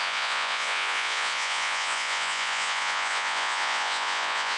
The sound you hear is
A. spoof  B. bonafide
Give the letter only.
A